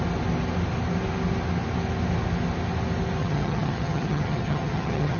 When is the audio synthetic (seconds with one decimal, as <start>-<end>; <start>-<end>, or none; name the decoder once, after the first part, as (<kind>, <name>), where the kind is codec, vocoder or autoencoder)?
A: 3.2-5.2 (vocoder, HiFi-GAN)

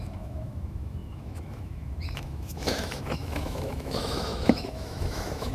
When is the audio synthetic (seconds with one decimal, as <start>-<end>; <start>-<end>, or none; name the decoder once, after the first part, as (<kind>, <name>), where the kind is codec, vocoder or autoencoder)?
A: 0.0-5.5 (autoencoder, DAC-VAE)

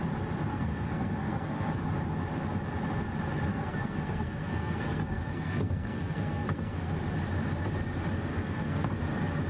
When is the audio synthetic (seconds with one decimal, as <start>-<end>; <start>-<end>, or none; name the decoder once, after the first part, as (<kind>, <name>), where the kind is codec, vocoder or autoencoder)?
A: 0.5-1.8 (codec, SNAC); 3.5-6.9; 8.3-8.9

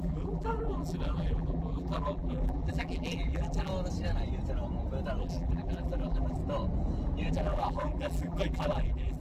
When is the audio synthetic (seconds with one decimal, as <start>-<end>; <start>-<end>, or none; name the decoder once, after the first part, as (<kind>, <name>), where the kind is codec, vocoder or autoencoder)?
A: 0.0-3.7 (vocoder, BigVGAN v2); 5.2-6.4; 7.3-9.2

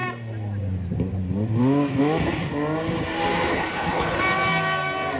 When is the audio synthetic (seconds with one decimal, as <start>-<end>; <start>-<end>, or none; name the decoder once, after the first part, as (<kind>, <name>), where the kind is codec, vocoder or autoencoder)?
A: 3.5-4.2 (codec, HILCodec)

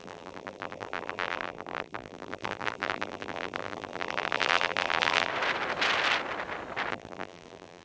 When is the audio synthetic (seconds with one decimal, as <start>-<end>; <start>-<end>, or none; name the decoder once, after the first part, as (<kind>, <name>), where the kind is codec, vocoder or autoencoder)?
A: 0.0-5.3 (vocoder, BigVGAN v2); 6.9-7.8

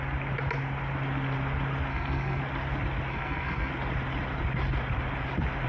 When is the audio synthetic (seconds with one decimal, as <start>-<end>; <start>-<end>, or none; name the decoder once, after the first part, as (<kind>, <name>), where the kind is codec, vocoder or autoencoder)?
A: 1.9-2.4 (codec, SNAC); 3.1-3.7

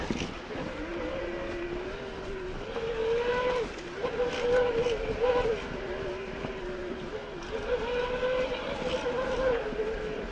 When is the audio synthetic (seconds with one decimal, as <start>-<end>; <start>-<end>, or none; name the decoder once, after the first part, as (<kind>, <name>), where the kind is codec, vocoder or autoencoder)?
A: none